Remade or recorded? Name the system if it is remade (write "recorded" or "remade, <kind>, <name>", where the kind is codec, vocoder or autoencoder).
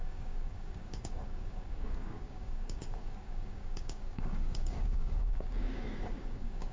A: remade, codec, DAC